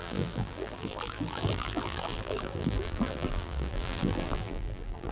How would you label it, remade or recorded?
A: remade